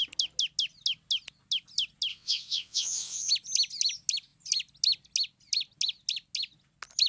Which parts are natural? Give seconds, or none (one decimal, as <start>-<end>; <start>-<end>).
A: 0.0-2.1; 3.3-7.1

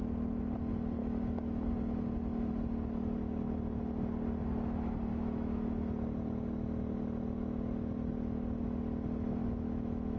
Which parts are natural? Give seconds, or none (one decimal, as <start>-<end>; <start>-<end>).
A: 0.0-1.0; 1.7-5.1; 5.7-9.4